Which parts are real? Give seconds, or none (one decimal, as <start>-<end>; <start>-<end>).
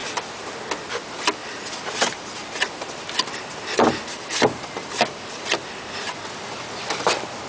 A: 0.5-1.4; 5.0-7.5